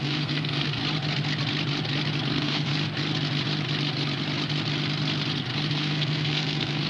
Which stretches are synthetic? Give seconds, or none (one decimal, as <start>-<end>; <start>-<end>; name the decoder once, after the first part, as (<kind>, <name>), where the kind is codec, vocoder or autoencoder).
0.0-0.8 (codec, SNAC); 2.3-2.7; 5.7-6.9